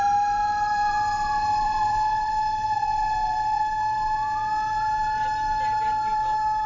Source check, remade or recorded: remade